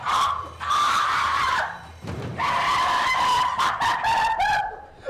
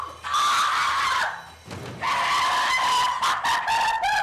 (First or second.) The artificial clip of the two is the first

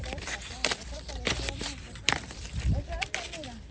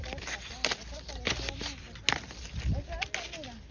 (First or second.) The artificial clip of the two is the first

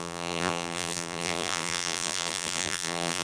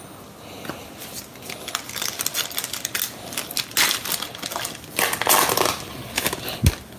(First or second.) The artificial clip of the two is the first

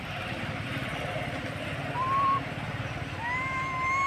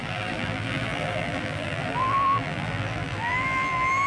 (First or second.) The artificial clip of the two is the second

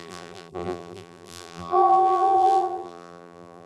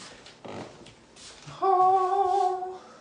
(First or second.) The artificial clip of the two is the first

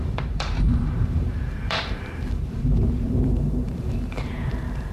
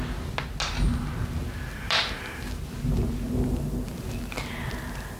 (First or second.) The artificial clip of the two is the first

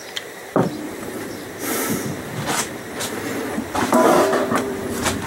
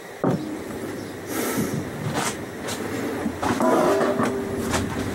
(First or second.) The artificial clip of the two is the first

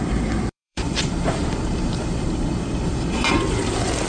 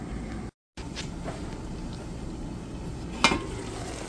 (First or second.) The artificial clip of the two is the first